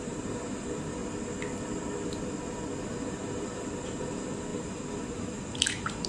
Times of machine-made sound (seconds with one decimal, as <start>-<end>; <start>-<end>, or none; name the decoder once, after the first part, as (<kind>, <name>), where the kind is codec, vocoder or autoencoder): 0.0-1.0 (vocoder, BigVGAN v2); 2.8-6.1